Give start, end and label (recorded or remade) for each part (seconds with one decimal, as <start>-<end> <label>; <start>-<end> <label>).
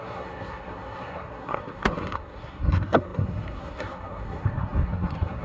0.0-5.4 remade